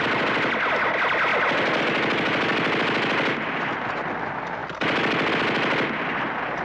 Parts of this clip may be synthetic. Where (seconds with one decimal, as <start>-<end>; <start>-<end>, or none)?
1.3-1.8